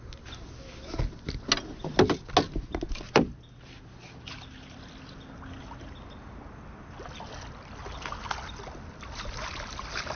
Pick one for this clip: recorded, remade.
recorded